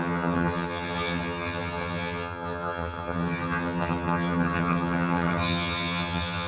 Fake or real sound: fake